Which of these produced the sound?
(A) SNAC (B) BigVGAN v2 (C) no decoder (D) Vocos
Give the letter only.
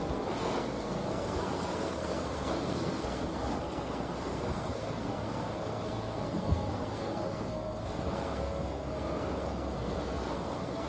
A